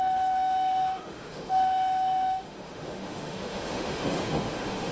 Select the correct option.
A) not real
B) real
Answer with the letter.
A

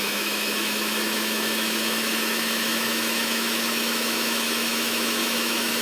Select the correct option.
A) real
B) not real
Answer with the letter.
B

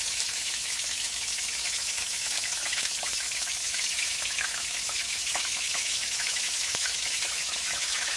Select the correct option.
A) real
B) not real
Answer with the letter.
B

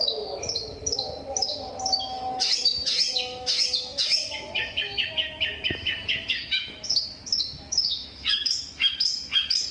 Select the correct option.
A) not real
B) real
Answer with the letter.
A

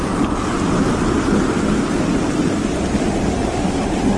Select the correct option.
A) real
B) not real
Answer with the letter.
A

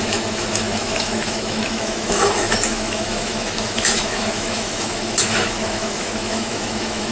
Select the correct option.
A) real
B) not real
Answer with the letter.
B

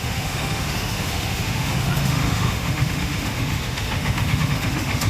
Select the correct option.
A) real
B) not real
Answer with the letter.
B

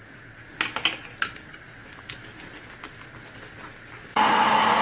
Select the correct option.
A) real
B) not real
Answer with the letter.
A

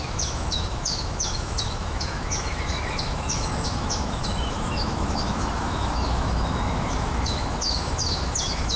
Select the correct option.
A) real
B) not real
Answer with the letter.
B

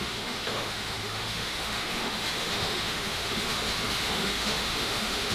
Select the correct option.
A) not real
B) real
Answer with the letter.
A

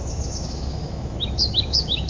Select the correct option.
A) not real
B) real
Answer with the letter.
A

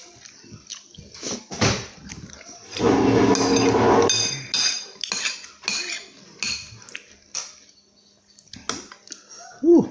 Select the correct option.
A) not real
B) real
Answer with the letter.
B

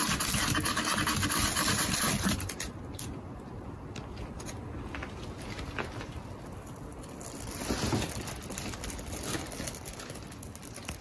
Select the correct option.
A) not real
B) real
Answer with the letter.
B